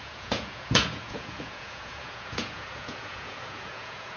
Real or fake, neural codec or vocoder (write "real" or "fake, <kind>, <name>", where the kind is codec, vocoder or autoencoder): fake, vocoder, Vocos